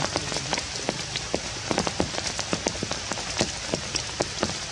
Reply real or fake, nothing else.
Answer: real